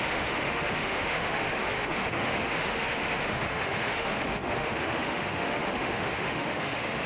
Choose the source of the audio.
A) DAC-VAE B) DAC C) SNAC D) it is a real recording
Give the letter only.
A